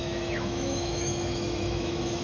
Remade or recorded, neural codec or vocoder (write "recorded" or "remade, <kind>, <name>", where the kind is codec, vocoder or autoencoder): remade, autoencoder, DAC-VAE